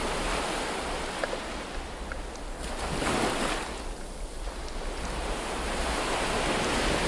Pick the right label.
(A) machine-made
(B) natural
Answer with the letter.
B